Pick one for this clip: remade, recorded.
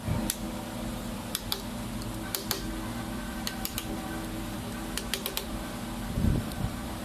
remade